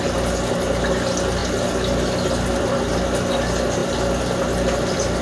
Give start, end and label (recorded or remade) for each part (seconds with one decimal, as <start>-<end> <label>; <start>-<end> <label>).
0.0-5.2 recorded